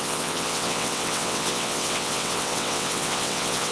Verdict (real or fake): fake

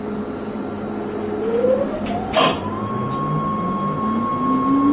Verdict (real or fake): real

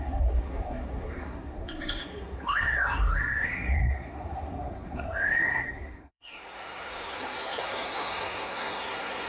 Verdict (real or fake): fake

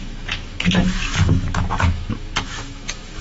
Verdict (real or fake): fake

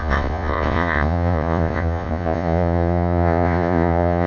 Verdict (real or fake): fake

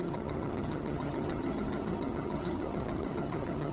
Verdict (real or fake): fake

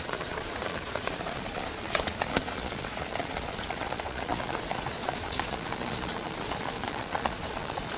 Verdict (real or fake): fake